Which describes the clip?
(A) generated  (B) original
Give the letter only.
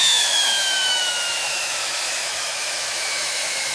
A